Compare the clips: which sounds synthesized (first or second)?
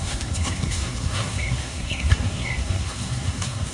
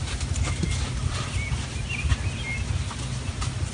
first